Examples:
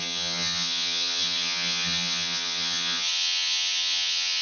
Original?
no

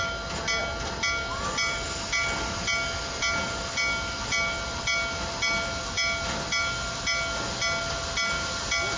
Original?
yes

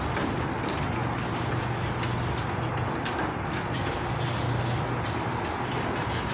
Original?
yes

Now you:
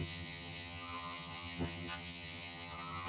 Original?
no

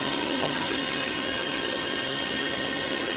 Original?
no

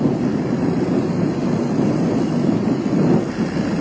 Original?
yes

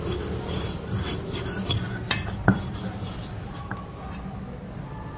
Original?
yes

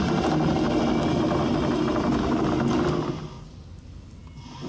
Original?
yes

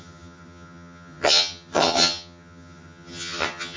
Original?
no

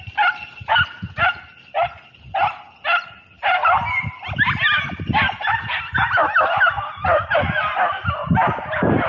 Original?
yes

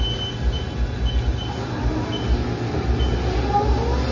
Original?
yes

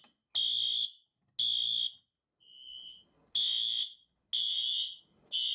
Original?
yes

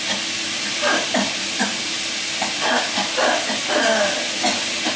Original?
yes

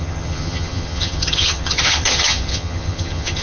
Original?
no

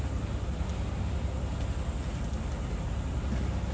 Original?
yes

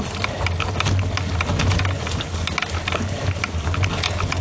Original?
yes